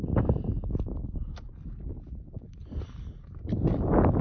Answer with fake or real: real